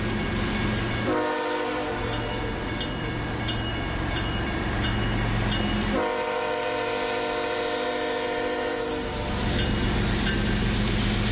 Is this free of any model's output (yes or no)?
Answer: yes